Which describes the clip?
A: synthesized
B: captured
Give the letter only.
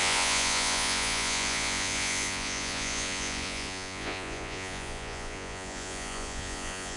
A